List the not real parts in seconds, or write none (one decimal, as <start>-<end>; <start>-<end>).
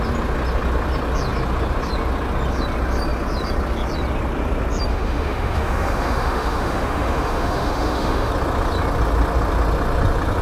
4.9-8.3